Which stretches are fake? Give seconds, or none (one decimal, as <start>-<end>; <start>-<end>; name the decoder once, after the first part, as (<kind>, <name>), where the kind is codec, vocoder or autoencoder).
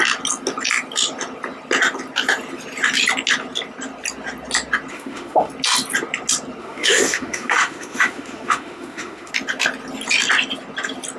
4.9-5.5 (autoencoder, DAC-VAE); 6.6-9.3